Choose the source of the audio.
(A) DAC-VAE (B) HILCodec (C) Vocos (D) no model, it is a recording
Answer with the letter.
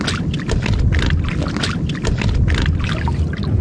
D